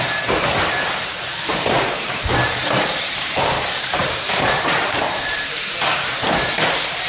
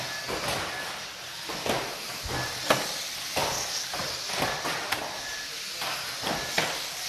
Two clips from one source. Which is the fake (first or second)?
first